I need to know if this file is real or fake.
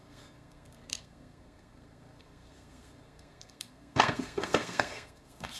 fake